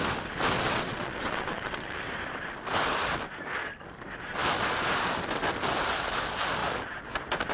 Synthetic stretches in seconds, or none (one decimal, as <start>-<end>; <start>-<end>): 0.7-2.0